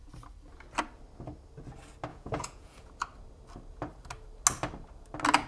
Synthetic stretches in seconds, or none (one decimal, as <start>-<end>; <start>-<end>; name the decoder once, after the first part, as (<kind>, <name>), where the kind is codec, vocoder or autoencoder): 2.1-2.9 (vocoder, Vocos)